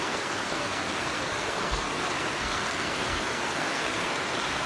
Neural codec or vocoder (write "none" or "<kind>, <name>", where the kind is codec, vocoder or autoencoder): codec, SNAC